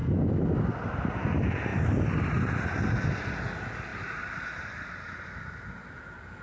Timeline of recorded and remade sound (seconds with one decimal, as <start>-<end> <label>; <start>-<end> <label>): 0.0-1.7 recorded; 1.7-3.4 remade; 3.4-3.9 recorded; 3.9-5.3 remade; 5.3-6.4 recorded